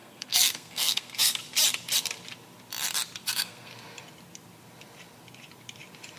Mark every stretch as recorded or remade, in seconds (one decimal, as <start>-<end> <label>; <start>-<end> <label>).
0.0-1.4 remade; 1.4-3.3 recorded; 3.3-3.7 remade; 3.7-6.2 recorded